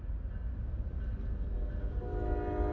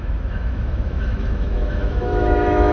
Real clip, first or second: first